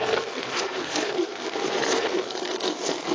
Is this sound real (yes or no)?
no